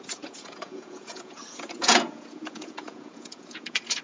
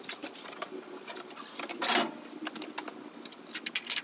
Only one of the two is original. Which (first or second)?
second